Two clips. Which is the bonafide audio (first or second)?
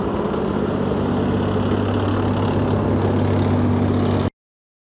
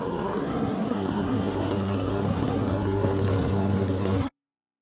first